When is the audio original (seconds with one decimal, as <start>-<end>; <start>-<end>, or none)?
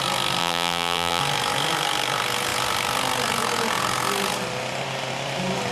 0.0-0.4; 1.2-5.7